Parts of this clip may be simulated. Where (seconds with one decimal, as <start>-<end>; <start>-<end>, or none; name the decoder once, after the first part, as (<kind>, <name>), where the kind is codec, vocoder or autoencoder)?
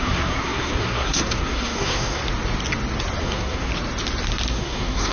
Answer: 0.0-2.2 (codec, SNAC); 3.2-3.7; 4.5-5.1